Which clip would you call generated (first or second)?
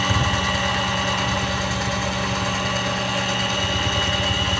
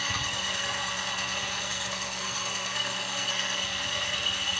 second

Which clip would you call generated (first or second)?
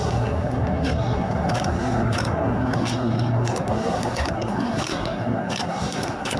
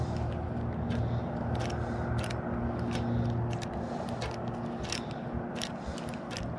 first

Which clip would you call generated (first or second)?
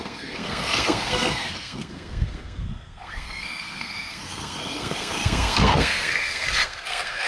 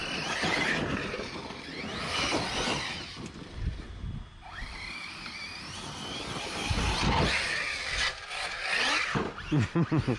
first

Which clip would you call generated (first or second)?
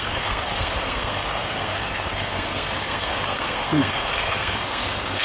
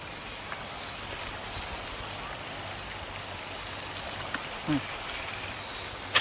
first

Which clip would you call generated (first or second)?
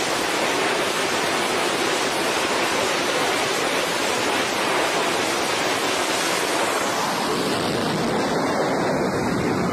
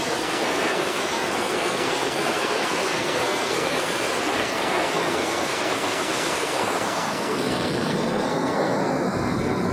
second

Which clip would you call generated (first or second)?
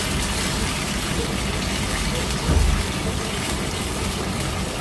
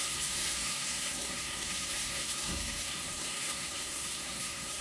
second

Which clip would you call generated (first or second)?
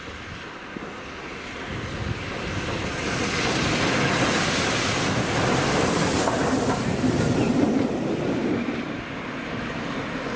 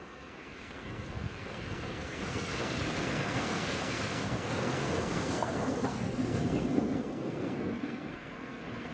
second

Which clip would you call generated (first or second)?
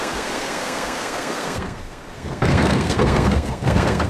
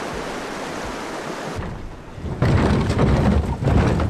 first